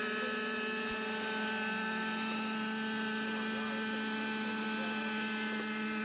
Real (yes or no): yes